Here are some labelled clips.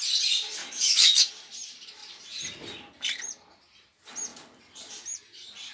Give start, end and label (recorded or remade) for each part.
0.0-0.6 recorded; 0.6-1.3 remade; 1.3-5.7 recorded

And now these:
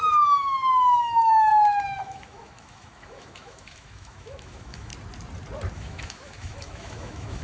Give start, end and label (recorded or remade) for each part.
0.0-1.5 remade; 1.5-2.0 recorded; 2.0-4.9 remade; 4.9-5.7 recorded; 5.7-7.4 remade

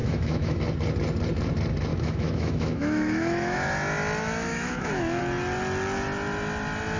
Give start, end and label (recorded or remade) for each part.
0.0-0.6 remade; 0.6-1.9 recorded; 1.9-3.7 remade; 3.7-4.5 recorded; 4.5-5.2 remade; 5.2-7.0 recorded

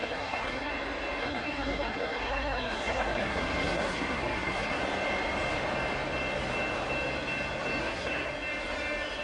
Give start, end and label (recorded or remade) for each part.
0.0-0.7 remade; 0.7-1.2 recorded; 1.2-4.8 remade; 4.8-7.8 recorded; 7.8-8.3 remade; 8.3-9.2 recorded

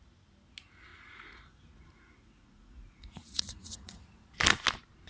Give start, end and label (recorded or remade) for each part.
0.0-0.9 recorded; 0.9-4.0 remade; 4.0-5.1 recorded

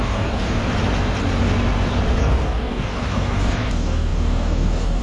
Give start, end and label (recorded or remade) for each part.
0.0-0.6 remade; 0.6-2.2 recorded; 2.2-5.0 remade

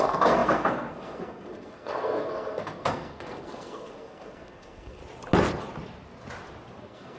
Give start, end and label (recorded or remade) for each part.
0.0-5.0 remade; 5.0-6.8 recorded; 6.8-7.2 remade